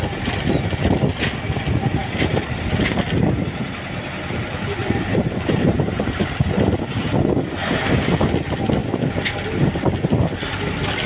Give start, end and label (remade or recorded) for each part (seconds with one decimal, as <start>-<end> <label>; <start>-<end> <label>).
0.0-4.8 recorded; 4.8-6.8 remade; 6.8-11.1 recorded